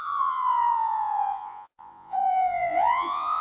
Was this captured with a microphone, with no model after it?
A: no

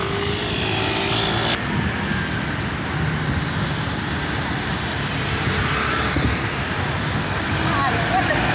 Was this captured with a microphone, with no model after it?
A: yes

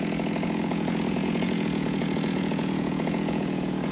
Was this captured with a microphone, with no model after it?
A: no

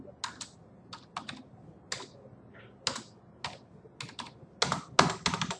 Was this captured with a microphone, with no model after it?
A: yes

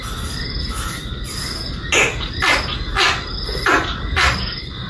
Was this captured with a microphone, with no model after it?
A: yes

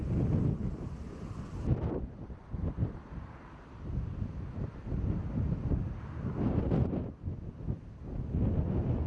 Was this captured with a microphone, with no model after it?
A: yes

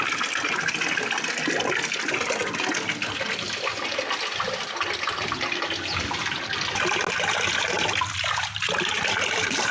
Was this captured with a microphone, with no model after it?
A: yes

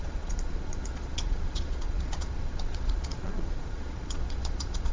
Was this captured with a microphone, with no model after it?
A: no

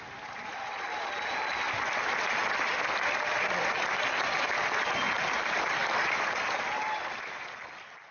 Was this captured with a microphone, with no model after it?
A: yes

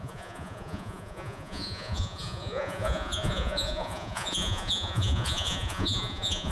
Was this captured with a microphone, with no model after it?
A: no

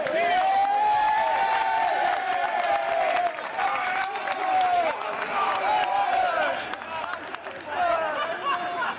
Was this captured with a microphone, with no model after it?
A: yes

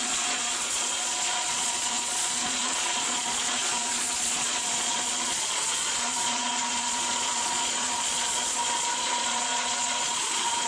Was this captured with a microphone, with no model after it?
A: no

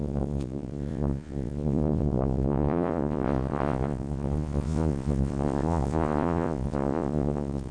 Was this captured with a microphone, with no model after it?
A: no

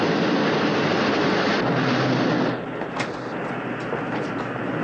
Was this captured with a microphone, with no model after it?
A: yes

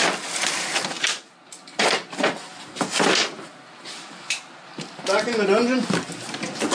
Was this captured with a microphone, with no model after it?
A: yes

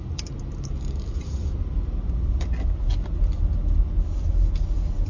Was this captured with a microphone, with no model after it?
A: yes